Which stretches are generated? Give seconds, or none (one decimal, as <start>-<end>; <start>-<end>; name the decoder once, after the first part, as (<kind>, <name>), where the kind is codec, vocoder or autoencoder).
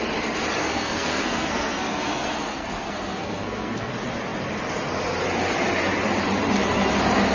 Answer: 0.6-3.9 (codec, SNAC)